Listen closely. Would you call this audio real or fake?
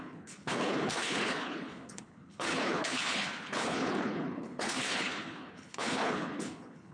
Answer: fake